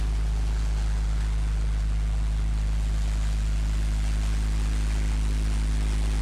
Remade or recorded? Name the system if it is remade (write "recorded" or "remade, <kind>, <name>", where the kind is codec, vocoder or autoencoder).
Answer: recorded